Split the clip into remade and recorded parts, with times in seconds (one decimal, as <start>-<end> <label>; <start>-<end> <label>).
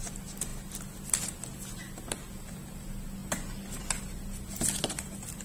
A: 0.0-5.4 recorded